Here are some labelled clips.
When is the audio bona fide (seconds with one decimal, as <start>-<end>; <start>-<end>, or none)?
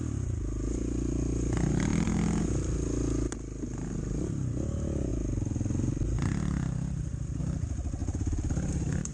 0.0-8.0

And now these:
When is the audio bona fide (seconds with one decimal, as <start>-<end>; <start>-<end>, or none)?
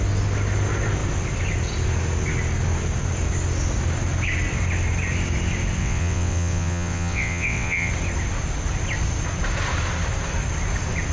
0.0-5.8; 7.9-11.1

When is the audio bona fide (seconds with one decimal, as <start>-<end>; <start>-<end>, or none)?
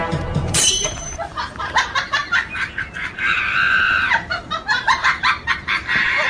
none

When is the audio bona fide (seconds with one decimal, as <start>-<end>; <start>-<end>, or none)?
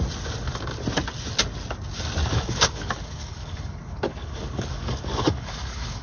0.0-2.3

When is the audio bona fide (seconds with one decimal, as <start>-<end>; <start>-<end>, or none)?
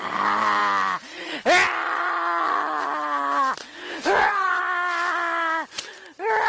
0.0-3.6; 4.6-6.5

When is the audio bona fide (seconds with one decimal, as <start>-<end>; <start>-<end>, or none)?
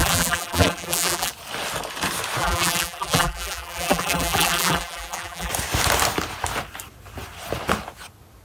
1.3-2.4; 5.5-8.4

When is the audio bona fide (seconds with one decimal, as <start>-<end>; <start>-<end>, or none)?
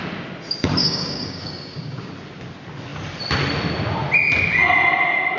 0.0-0.8; 2.1-5.4